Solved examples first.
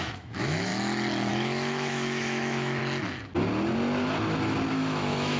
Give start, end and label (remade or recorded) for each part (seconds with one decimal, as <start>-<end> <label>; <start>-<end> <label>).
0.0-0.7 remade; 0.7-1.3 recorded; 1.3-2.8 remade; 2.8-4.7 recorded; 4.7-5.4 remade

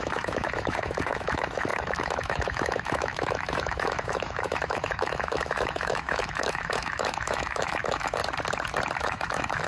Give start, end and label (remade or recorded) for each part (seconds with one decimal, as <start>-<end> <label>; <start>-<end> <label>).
0.0-8.2 remade; 8.2-9.0 recorded; 9.0-9.7 remade

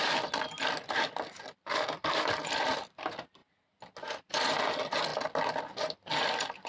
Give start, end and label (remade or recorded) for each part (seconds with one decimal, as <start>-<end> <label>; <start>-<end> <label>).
0.0-6.7 recorded